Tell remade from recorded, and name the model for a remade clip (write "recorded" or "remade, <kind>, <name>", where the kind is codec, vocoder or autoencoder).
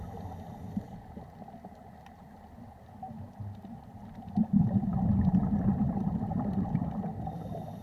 recorded